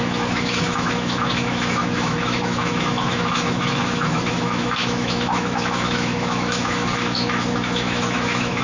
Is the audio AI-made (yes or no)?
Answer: yes